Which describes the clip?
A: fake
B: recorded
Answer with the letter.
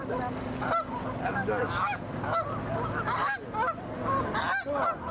B